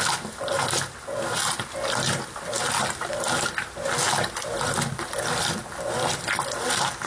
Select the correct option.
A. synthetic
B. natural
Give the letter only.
B